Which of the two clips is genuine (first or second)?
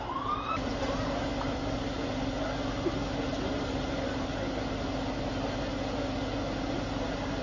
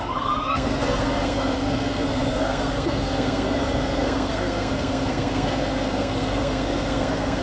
first